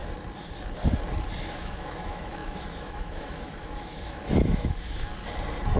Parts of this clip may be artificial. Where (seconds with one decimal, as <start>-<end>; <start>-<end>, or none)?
1.5-5.1